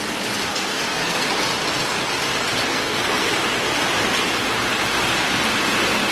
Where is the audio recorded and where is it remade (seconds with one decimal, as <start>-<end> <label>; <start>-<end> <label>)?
0.0-0.5 recorded; 0.5-1.3 remade; 1.3-2.7 recorded; 2.7-3.3 remade; 3.3-6.1 recorded